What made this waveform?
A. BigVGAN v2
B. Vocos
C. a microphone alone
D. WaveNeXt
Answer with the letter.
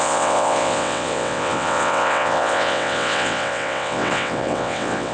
D